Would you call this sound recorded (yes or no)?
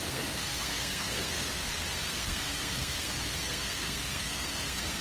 no